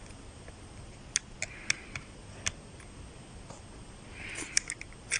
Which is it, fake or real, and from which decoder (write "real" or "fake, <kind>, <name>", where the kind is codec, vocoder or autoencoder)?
real